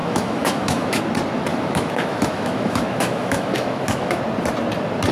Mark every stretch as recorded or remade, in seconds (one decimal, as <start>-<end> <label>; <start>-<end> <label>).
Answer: 0.0-1.0 remade; 1.0-1.5 recorded; 1.5-4.2 remade; 4.2-5.1 recorded